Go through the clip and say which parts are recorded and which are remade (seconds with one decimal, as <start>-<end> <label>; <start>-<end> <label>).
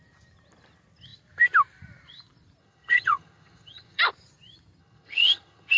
0.0-2.6 recorded; 2.6-4.0 remade; 4.0-4.8 recorded; 4.8-5.8 remade